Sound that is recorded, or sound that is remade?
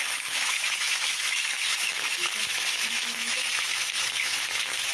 remade